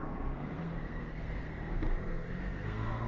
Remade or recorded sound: remade